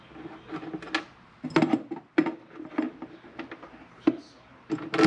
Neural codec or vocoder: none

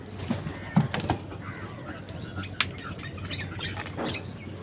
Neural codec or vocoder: none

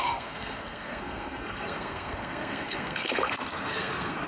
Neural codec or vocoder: codec, SNAC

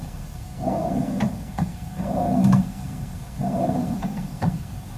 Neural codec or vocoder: codec, SNAC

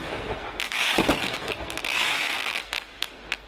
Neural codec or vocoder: codec, SNAC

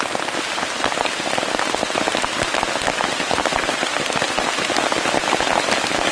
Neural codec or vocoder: none